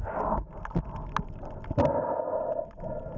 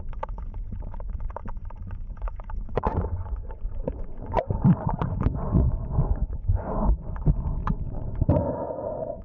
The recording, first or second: first